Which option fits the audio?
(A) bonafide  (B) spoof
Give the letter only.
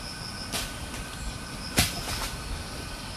A